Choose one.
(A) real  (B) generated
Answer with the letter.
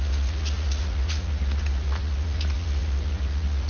B